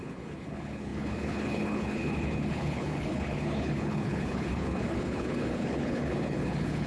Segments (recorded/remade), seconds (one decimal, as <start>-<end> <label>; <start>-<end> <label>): 0.0-6.9 remade